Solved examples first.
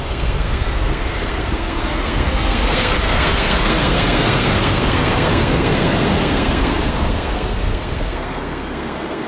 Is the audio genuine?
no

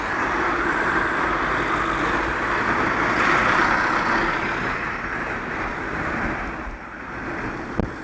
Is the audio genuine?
yes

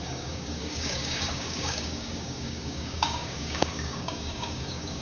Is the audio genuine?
no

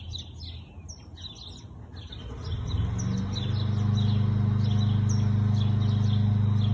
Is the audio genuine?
yes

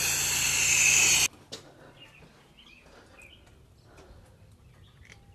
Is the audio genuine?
yes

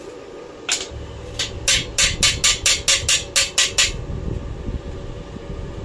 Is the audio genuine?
yes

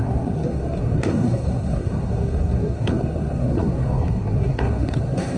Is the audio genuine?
no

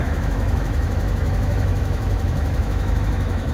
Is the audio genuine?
no